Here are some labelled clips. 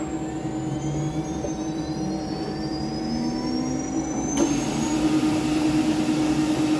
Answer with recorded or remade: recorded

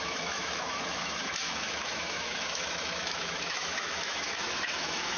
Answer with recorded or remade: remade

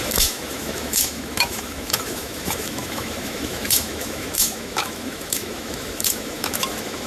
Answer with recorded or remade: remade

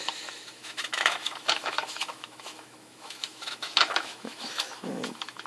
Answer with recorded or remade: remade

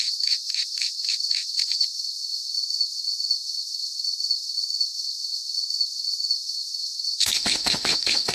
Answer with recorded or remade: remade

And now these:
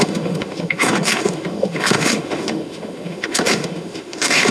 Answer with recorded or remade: remade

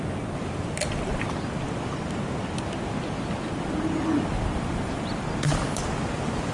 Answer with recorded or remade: recorded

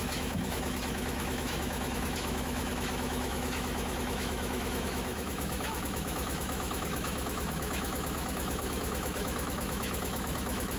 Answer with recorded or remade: remade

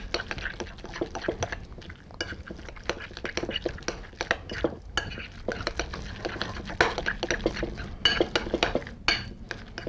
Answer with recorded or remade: recorded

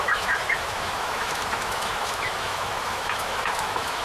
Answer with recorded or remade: remade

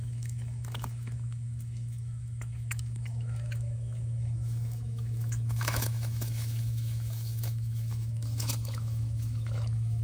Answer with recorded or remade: remade